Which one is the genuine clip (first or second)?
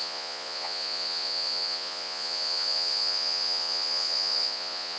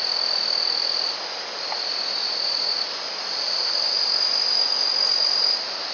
second